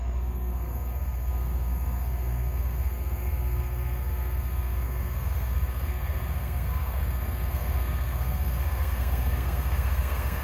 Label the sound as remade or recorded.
remade